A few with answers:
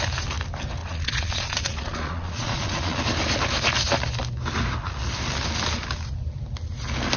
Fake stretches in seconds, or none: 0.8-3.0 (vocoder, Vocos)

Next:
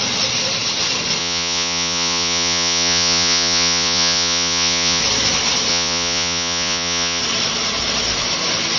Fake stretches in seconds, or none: 1.2-5.0 (vocoder, Vocos); 5.7-7.2

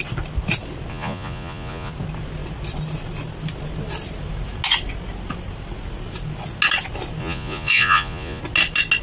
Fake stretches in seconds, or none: 0.9-1.9 (vocoder, Vocos); 7.2-8.4

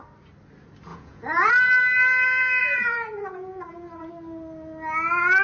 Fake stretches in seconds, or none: 0.9-1.5 (vocoder, Vocos); 2.6-4.1

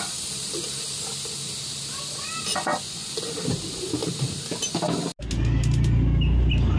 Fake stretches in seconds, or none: 2.5-3.3 (vocoder, Vocos)